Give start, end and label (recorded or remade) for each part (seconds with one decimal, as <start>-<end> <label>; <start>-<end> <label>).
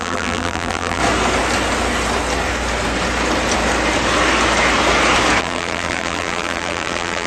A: 0.0-1.0 remade; 1.0-5.4 recorded; 5.4-7.3 remade